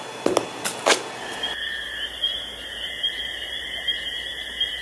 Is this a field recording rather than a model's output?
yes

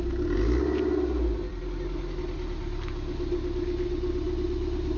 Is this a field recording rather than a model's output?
yes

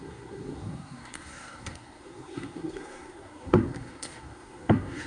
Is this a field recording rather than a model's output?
no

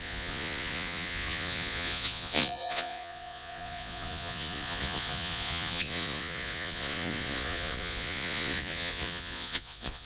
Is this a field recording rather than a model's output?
no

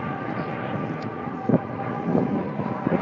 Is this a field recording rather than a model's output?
no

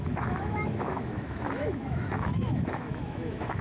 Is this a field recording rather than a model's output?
no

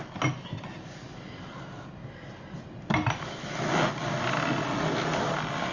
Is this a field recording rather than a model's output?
yes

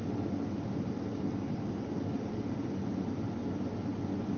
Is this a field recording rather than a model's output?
yes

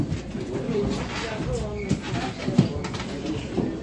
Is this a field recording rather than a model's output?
yes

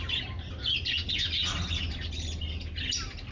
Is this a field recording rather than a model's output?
yes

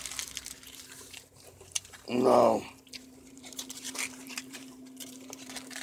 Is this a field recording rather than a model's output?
no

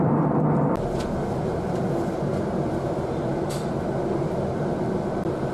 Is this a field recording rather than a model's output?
no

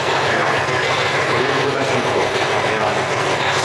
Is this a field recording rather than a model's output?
no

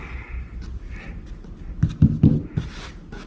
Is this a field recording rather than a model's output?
yes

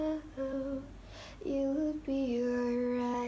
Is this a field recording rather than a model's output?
yes